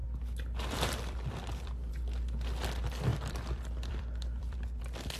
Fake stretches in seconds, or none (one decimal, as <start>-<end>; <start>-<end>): 0.0-1.9; 3.1-4.8